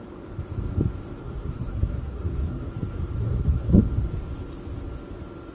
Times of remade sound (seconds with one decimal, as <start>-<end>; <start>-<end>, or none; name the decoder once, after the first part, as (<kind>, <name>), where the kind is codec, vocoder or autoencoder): 1.2-2.7 (codec, SNAC); 3.2-3.8